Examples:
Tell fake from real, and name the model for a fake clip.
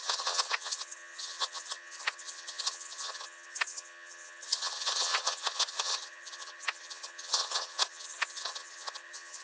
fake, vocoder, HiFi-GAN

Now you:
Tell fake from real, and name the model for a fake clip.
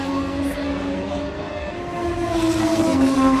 fake, codec, SNAC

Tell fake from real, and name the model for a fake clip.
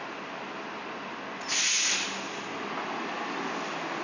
real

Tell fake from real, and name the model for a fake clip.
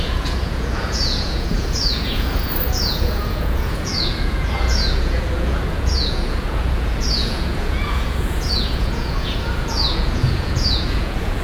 fake, vocoder, Vocos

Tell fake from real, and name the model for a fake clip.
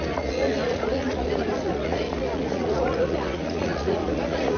fake, vocoder, Vocos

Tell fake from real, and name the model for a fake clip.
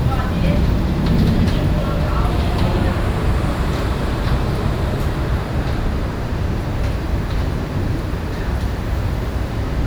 fake, vocoder, BigVGAN v2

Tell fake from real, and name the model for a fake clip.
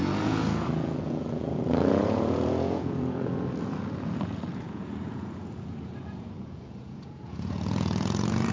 fake, vocoder, Vocos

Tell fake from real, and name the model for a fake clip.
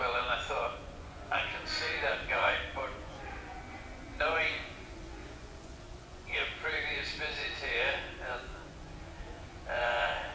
fake, vocoder, Vocos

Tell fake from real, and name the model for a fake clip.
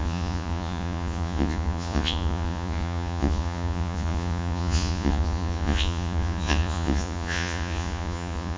fake, vocoder, Vocos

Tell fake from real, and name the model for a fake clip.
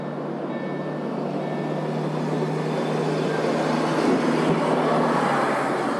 real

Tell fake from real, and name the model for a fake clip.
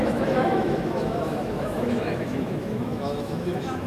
fake, autoencoder, DAC-VAE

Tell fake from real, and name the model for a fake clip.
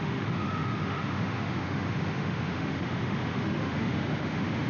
fake, autoencoder, DAC-VAE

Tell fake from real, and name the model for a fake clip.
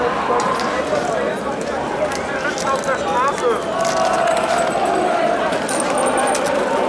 real